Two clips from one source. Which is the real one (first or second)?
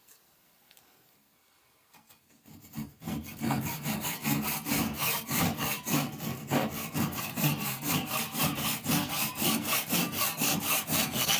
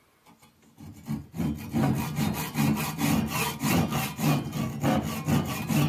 second